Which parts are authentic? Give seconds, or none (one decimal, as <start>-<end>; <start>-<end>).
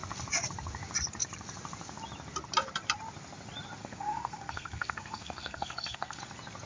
0.0-3.8; 6.2-6.7